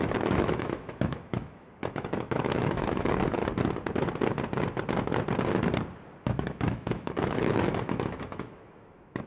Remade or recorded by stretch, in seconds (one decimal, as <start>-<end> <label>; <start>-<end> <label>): 0.0-3.4 remade; 3.4-6.2 recorded; 6.2-9.3 remade